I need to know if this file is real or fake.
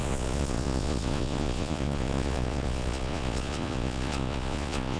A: fake